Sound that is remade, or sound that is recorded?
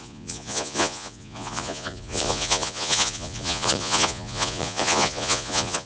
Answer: remade